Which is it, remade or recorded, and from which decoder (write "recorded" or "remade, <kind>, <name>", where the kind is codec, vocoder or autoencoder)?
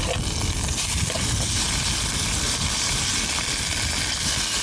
recorded